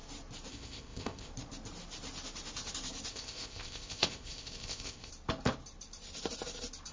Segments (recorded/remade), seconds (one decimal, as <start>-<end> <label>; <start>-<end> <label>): 0.0-0.5 recorded; 0.5-1.3 remade; 1.3-3.1 recorded; 3.1-5.1 remade; 5.1-6.9 recorded